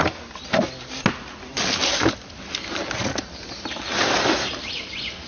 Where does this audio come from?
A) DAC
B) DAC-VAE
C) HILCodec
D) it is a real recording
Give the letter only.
D